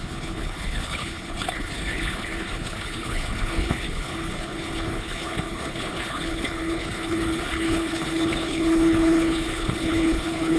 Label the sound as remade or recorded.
remade